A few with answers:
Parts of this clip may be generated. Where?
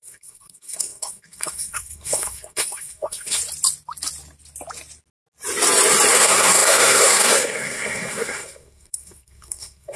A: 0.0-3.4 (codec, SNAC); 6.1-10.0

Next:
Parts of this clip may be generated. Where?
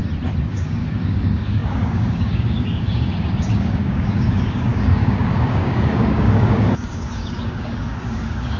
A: 0.5-8.6 (codec, DAC)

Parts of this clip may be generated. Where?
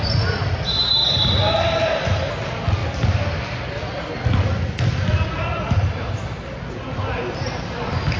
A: none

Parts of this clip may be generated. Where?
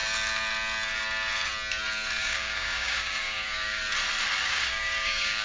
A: 2.2-3.8 (codec, DAC); 4.4-5.4